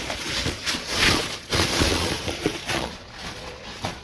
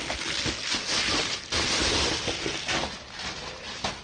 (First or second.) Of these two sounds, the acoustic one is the second